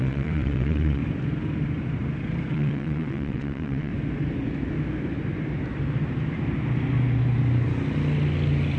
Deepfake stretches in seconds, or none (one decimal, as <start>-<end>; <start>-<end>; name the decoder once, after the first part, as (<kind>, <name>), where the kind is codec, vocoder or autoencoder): 0.0-1.0 (vocoder, WaveNeXt); 2.5-3.9